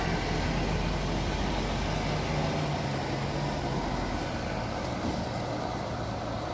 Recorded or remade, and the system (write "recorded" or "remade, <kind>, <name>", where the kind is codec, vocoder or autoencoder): recorded